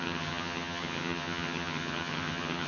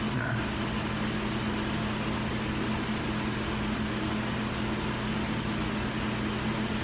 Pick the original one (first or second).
second